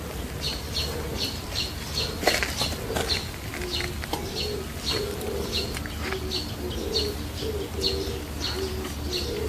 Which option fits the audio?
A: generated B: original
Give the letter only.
B